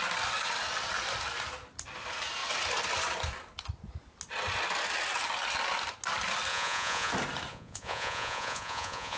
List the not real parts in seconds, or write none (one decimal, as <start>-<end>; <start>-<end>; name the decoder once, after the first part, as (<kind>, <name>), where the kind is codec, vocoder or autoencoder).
6.5-7.1 (vocoder, Vocos); 7.5-9.2